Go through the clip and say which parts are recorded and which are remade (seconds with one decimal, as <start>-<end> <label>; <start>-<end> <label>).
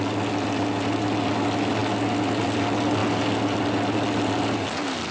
0.0-5.1 recorded